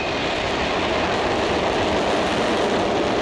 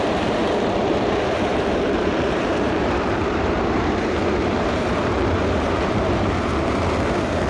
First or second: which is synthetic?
second